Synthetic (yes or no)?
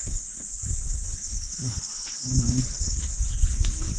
yes